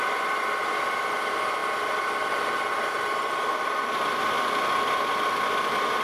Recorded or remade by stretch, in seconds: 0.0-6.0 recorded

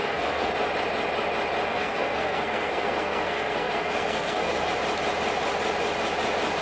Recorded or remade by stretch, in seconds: 0.0-0.5 remade; 0.5-1.7 recorded; 1.7-4.7 remade; 4.7-6.6 recorded

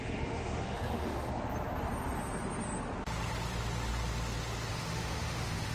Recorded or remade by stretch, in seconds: 0.0-1.3 remade; 1.3-4.7 recorded; 4.7-5.7 remade

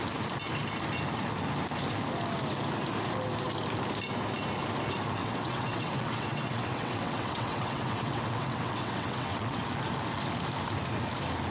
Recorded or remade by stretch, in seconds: 0.0-5.2 recorded; 5.2-9.6 remade; 9.6-11.5 recorded

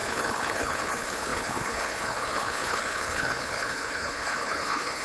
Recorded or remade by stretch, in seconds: 0.0-5.0 remade

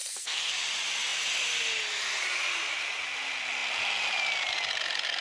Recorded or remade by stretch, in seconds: 0.0-0.5 remade; 0.5-5.2 recorded

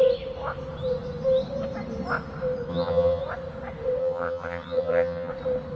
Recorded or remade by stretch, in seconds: 0.0-2.7 recorded; 2.7-3.2 remade; 3.2-4.0 recorded; 4.0-5.3 remade; 5.3-5.8 recorded